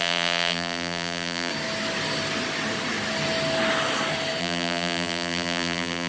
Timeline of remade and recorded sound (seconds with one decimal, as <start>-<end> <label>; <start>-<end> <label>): 0.0-1.5 remade; 1.5-4.4 recorded; 4.4-6.1 remade